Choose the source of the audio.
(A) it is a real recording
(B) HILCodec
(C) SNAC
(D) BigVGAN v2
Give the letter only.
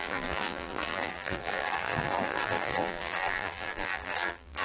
D